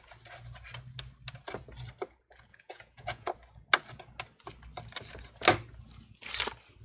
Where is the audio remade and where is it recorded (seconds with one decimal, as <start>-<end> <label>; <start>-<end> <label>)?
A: 0.0-2.5 recorded; 2.5-3.3 remade; 3.3-6.8 recorded